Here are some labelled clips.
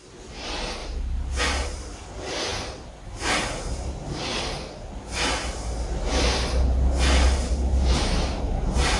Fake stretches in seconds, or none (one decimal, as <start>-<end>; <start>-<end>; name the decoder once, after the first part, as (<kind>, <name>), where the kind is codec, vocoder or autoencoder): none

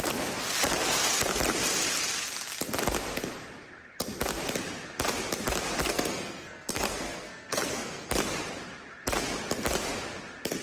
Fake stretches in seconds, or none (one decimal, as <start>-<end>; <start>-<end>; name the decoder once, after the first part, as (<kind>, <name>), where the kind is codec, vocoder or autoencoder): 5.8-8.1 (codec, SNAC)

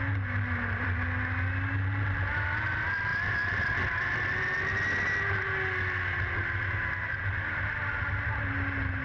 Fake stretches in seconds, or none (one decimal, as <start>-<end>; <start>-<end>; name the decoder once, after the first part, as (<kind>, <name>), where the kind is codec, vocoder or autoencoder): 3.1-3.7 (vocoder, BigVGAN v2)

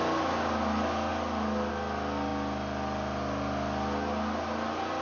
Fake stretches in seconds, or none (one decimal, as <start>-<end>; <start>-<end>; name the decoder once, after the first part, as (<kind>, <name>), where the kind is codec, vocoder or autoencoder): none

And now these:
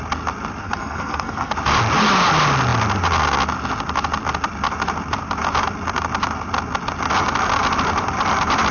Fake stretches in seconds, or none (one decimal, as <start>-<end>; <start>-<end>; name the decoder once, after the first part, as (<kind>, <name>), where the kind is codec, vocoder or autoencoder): 0.6-1.5 (codec, SNAC)